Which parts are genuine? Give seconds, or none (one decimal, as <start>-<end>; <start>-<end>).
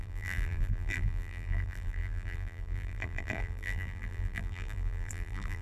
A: none